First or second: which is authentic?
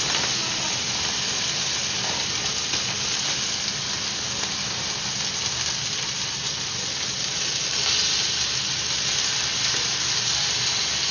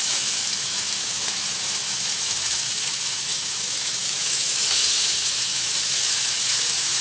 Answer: first